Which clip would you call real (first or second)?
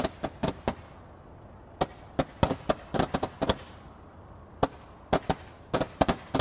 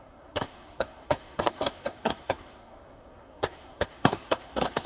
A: first